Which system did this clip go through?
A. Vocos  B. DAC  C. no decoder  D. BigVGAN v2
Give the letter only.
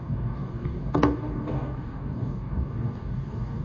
B